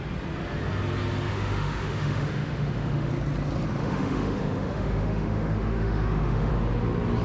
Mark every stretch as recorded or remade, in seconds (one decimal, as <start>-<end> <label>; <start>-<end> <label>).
0.0-1.3 recorded; 1.3-3.1 remade; 3.1-3.8 recorded; 3.8-6.5 remade; 6.5-7.2 recorded